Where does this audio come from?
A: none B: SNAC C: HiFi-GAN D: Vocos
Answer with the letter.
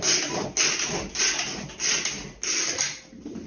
A